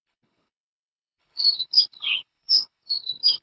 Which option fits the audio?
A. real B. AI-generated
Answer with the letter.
B